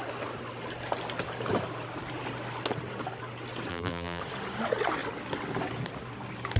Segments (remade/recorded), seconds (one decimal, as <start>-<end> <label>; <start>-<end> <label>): 0.0-3.7 recorded; 3.7-4.2 remade; 4.2-6.6 recorded